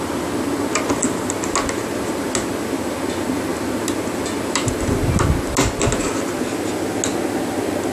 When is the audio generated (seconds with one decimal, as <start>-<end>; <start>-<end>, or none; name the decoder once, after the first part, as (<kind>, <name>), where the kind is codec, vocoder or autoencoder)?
none